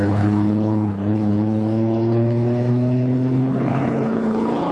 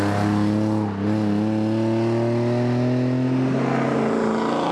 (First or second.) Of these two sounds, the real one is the second